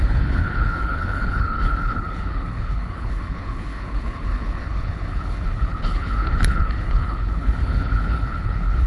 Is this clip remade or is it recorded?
remade